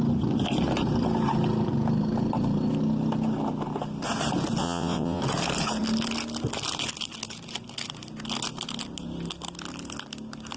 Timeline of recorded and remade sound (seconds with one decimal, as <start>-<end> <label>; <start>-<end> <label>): 0.0-4.6 recorded; 4.6-5.2 remade; 5.2-10.6 recorded